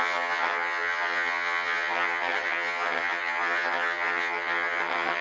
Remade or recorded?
remade